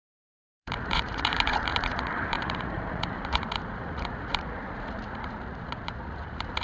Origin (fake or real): fake